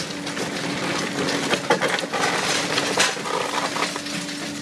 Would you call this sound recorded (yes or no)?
yes